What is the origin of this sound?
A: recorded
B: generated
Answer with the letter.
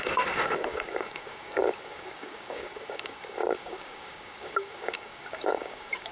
B